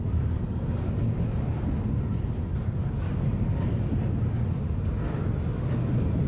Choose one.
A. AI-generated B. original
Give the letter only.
B